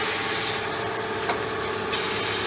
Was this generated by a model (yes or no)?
no